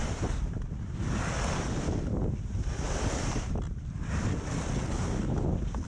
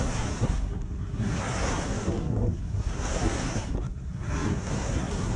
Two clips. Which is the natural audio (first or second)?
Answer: first